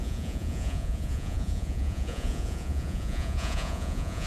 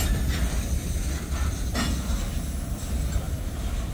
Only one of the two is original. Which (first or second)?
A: second